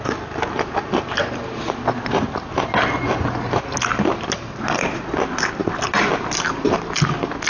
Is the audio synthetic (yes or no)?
no